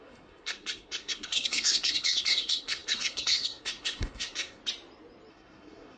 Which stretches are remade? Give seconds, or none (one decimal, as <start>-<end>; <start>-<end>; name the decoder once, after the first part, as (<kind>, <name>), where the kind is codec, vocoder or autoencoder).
0.0-4.6 (codec, SNAC); 5.3-6.0